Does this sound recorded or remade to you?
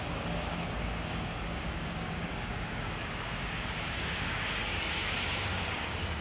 remade